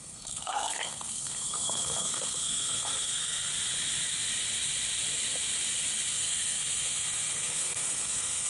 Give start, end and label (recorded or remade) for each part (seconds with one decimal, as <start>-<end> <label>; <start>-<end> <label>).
0.0-3.5 remade; 3.5-6.1 recorded; 6.1-8.5 remade